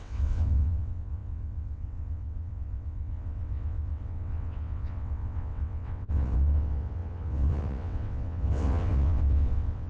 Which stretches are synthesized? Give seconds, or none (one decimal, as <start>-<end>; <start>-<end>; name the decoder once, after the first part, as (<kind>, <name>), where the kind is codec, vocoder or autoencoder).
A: 0.0-9.9 (vocoder, WaveNeXt)